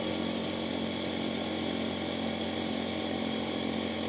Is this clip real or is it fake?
real